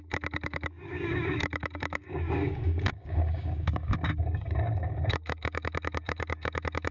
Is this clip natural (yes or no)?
no